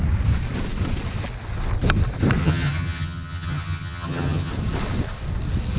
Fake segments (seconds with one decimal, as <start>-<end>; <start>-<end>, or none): 2.4-4.5